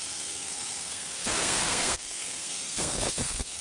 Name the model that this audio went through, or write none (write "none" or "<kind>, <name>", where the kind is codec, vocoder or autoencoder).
codec, SNAC